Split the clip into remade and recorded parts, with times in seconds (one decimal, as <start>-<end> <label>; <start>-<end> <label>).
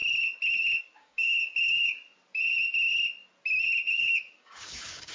0.0-0.8 recorded; 0.8-2.0 remade; 2.0-4.0 recorded; 4.0-5.1 remade